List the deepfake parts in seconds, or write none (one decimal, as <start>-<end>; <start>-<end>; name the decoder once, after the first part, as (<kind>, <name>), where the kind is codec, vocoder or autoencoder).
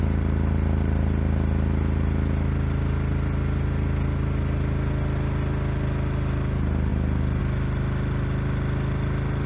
none